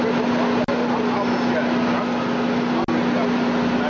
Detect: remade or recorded recorded